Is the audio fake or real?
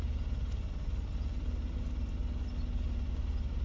real